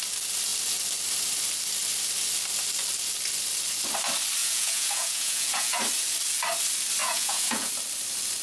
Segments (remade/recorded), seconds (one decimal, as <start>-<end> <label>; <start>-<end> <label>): 0.0-4.4 recorded; 4.4-5.8 remade; 5.8-7.0 recorded; 7.0-7.7 remade; 7.7-8.4 recorded